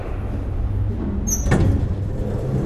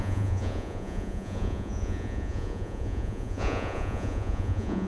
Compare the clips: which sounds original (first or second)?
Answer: first